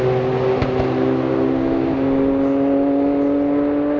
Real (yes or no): yes